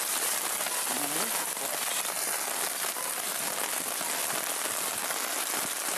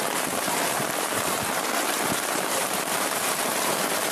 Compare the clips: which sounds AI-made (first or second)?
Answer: second